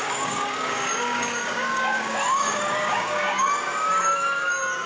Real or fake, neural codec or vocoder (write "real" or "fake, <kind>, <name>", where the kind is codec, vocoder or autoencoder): fake, codec, DAC